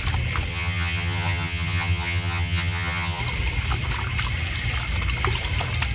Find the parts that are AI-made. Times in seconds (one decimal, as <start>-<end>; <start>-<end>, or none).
0.5-3.2